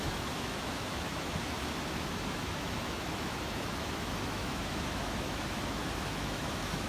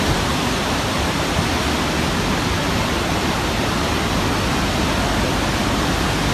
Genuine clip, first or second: second